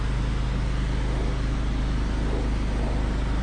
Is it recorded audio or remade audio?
recorded